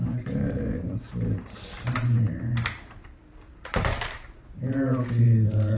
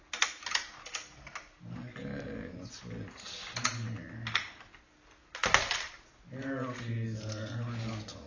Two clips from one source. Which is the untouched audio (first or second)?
second